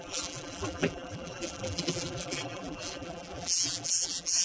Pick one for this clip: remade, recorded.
remade